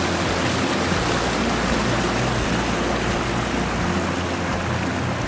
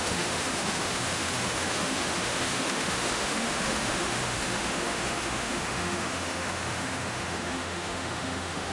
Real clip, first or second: first